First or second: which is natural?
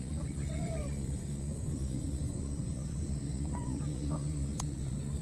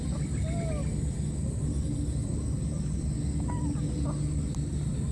second